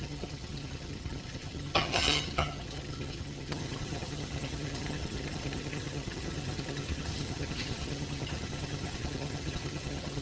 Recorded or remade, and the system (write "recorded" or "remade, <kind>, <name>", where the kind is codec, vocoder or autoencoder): remade, vocoder, HiFi-GAN